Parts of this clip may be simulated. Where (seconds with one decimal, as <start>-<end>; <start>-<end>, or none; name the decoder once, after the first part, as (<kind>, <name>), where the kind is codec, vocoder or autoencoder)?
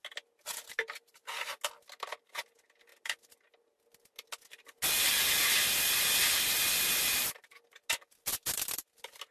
none